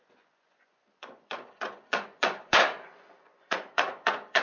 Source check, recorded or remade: remade